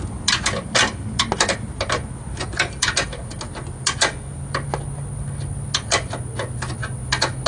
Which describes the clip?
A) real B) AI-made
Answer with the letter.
A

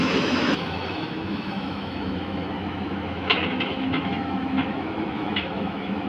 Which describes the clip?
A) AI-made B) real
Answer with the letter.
A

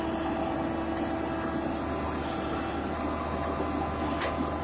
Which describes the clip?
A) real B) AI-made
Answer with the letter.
A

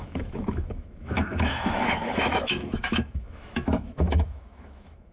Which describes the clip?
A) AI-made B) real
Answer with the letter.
A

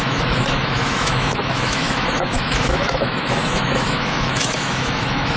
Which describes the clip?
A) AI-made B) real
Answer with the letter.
A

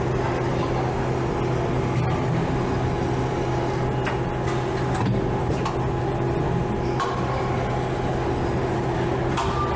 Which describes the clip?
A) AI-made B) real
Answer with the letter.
B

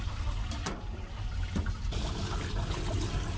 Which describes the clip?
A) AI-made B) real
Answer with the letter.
B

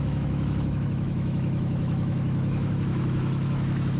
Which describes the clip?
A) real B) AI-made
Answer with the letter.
B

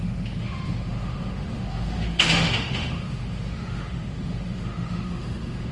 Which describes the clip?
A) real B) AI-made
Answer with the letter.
B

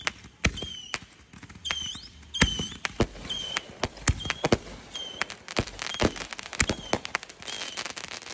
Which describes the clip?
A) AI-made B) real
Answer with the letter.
B